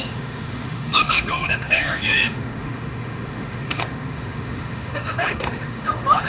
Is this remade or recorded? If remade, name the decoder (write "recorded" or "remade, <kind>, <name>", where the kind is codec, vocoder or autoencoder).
remade, autoencoder, DAC-VAE